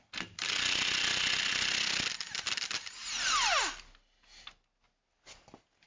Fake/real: real